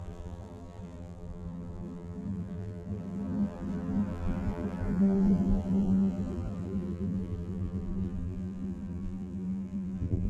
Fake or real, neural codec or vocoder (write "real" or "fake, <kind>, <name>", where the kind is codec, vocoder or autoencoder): fake, vocoder, BigVGAN v2